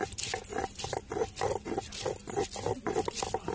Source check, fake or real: real